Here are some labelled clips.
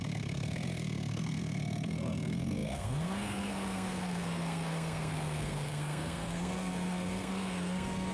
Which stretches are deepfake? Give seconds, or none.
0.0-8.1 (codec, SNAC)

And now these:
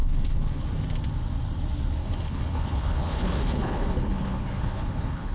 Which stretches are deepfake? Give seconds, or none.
0.0-0.7 (codec, HILCodec); 2.0-5.3

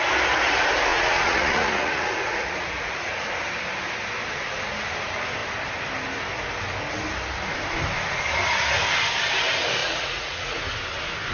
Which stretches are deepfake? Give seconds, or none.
0.9-3.3 (vocoder, Vocos); 9.8-10.6

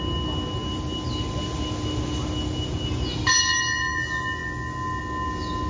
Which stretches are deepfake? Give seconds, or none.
none

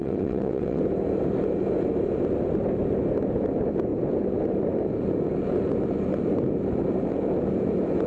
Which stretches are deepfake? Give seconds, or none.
0.0-0.8 (vocoder, WaveNeXt)

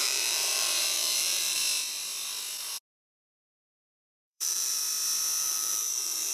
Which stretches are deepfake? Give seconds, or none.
0.0-1.6 (vocoder, BigVGAN v2); 3.0-4.8; 5.4-6.3

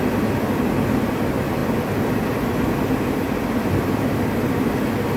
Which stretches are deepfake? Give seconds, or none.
none